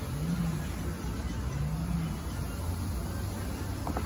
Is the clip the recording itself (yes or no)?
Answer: yes